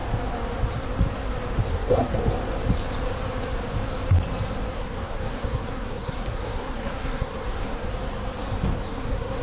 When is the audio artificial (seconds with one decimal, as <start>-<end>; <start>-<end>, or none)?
1.7-2.2; 4.7-7.9; 8.9-9.4